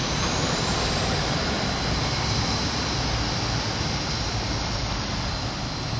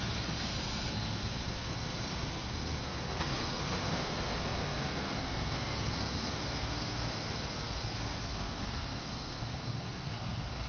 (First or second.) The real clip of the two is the first